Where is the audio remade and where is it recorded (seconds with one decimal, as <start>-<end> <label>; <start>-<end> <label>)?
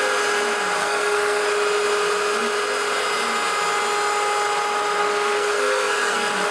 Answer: 0.0-0.8 recorded; 0.8-1.4 remade; 1.4-5.0 recorded; 5.0-6.5 remade